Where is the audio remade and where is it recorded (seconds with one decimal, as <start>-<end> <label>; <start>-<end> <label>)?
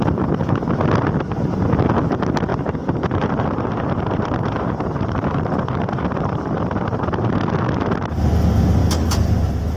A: 0.0-2.5 recorded; 2.5-7.4 remade; 7.4-8.8 recorded; 8.8-9.8 remade